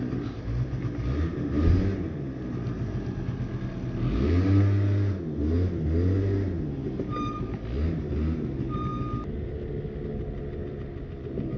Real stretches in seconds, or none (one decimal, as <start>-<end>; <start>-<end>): 0.0-11.6